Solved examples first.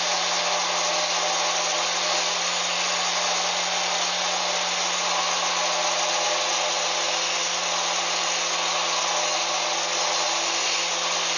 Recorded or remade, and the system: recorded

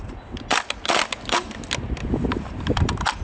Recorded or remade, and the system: recorded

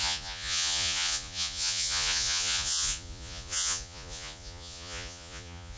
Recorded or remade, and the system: remade, vocoder, Vocos